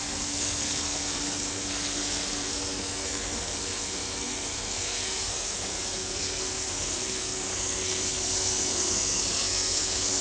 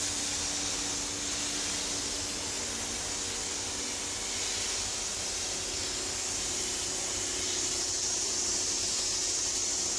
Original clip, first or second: second